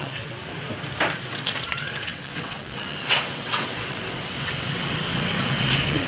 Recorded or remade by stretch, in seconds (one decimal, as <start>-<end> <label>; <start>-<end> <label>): 0.0-0.5 remade; 0.5-1.2 recorded; 1.2-6.1 remade